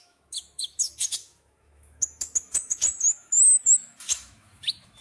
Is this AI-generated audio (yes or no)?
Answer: yes